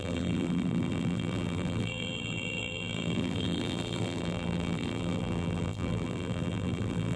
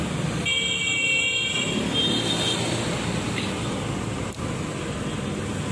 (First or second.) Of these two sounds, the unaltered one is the second